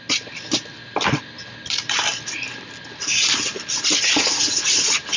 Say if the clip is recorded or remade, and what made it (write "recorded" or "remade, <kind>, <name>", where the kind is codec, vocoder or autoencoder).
recorded